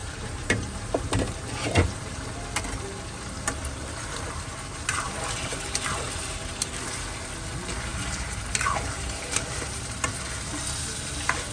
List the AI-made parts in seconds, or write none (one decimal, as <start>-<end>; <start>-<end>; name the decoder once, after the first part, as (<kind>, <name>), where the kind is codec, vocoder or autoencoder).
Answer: 0.0-2.3 (vocoder, BigVGAN v2); 7.9-10.0